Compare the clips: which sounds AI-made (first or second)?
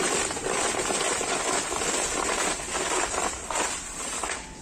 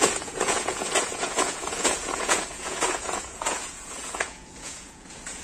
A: second